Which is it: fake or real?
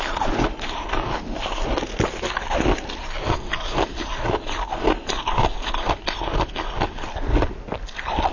real